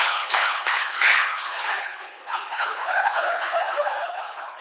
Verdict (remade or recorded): remade